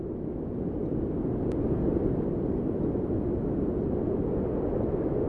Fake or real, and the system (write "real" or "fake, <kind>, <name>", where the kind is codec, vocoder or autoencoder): real